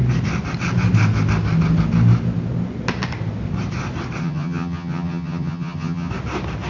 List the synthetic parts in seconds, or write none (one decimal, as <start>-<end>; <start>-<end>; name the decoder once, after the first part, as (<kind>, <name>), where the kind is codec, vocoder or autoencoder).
4.2-6.1 (vocoder, HiFi-GAN)